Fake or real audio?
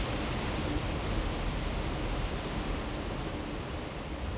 real